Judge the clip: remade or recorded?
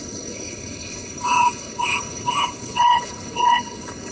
remade